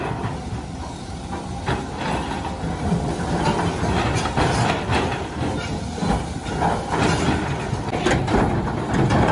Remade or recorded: recorded